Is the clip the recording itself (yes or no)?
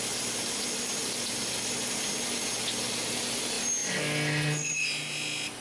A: yes